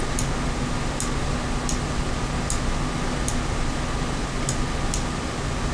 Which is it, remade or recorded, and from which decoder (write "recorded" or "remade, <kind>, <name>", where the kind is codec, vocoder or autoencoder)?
recorded